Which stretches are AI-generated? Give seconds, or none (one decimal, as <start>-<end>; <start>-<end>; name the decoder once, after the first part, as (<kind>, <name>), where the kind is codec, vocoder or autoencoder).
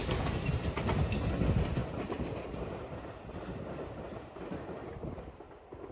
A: 0.0-0.5 (codec, DAC)